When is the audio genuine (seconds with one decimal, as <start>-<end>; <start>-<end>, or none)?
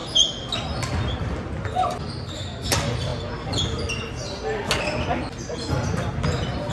0.0-6.7